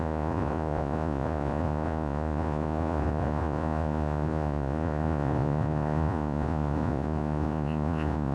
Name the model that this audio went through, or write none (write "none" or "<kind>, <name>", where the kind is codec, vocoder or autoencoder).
vocoder, Vocos